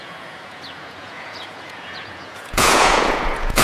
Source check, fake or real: fake